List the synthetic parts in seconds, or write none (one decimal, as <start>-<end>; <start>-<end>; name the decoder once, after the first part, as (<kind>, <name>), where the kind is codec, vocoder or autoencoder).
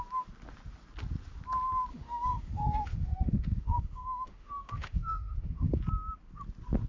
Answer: 1.9-5.8 (autoencoder, DAC-VAE)